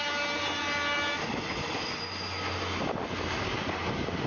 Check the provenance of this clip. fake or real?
real